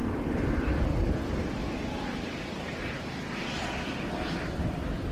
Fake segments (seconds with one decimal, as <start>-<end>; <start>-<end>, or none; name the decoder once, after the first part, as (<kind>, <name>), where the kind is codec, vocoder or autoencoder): none